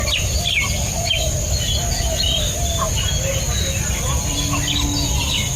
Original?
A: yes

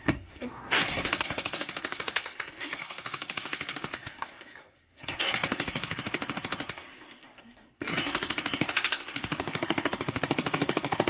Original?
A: no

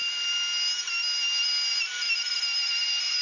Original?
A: yes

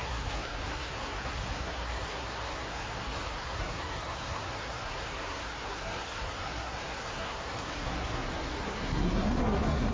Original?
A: no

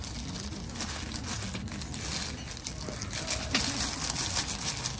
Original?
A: yes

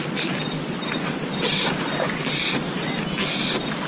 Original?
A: yes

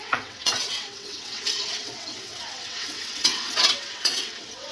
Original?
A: no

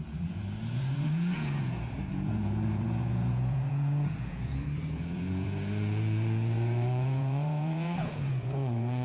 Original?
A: no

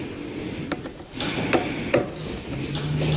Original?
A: yes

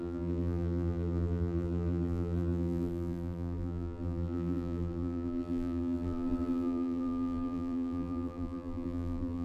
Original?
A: no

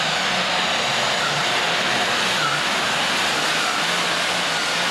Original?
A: yes